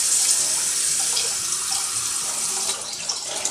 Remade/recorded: remade